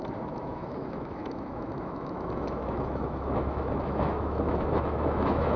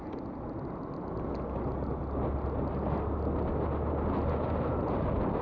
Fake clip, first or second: first